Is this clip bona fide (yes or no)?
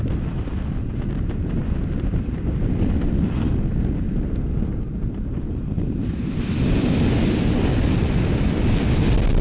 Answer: no